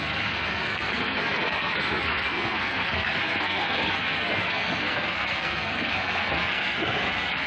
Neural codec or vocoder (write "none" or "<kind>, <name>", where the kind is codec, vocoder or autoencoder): codec, SNAC